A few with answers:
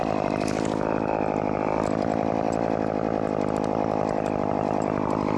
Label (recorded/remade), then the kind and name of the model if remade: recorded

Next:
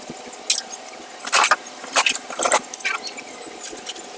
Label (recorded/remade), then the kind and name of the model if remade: recorded